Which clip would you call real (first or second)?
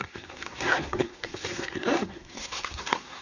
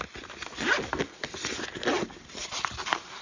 second